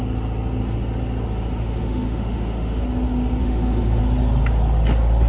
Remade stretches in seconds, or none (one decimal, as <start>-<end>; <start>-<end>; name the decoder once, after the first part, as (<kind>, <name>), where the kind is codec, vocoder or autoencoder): 1.6-2.8 (autoencoder, DAC-VAE); 3.4-4.0